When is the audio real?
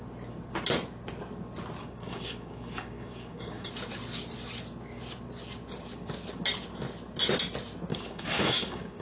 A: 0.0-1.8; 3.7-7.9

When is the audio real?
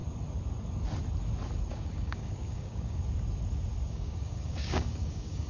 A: 0.0-1.7; 3.0-3.9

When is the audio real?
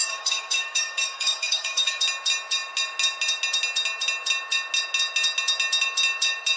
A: 2.0-6.6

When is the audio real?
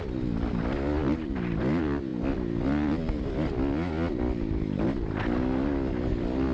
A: 0.0-6.5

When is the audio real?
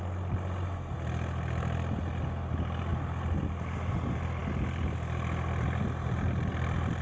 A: 0.0-7.0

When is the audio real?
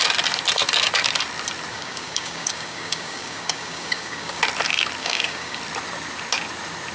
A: 0.0-1.7; 4.4-5.0; 5.6-6.9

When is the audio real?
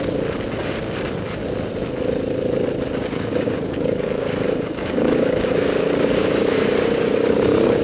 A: 0.0-2.9